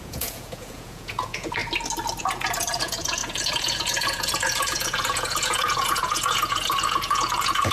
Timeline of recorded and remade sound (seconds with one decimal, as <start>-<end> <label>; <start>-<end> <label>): 0.0-1.6 remade; 1.6-2.2 recorded; 2.2-7.7 remade